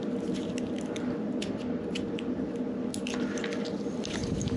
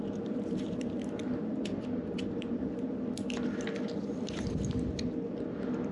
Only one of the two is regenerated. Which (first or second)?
second